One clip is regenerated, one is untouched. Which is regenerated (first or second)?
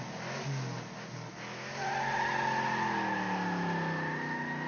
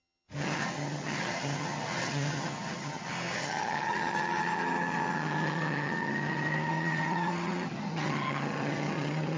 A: second